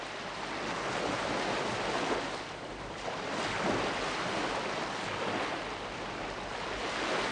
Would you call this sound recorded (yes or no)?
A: yes